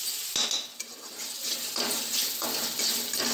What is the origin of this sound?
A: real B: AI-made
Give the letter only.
A